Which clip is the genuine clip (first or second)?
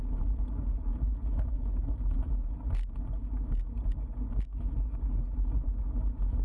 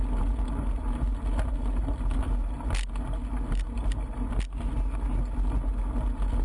second